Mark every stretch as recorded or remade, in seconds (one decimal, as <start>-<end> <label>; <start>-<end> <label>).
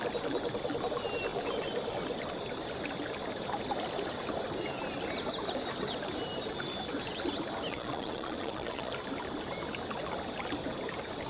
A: 0.0-7.7 recorded; 7.7-8.9 remade; 8.9-11.3 recorded